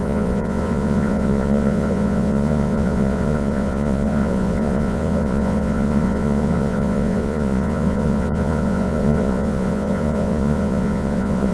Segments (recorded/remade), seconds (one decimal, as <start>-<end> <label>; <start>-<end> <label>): 0.0-11.5 remade